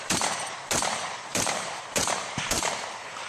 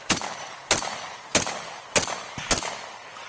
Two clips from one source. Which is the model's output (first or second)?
first